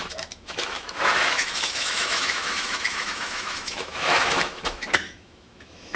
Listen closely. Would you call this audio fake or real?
fake